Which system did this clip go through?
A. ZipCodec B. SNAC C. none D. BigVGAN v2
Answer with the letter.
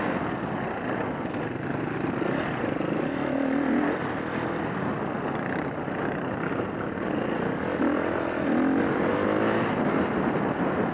C